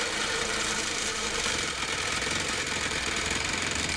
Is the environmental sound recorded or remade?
remade